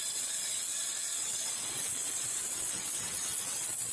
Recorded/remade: remade